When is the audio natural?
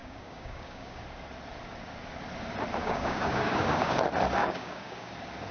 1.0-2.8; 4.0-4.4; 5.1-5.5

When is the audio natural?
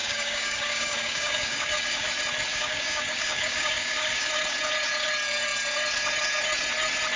2.1-2.5; 4.3-7.2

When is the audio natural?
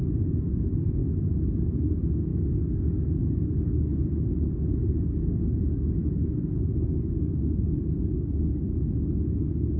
1.0-1.6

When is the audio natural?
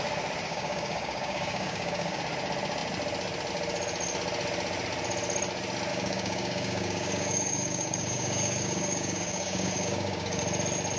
0.0-0.5; 2.2-5.9; 10.4-11.0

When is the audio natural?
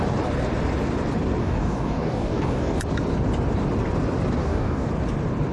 0.0-1.4; 2.8-4.4; 4.9-5.5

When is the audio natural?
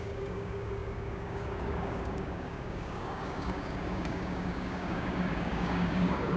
none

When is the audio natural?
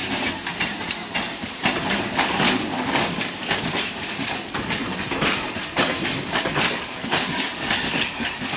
0.0-1.9; 4.8-6.4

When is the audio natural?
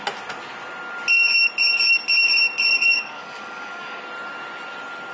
0.0-2.7; 4.0-5.1